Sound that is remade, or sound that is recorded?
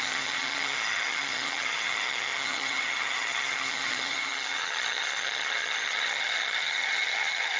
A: remade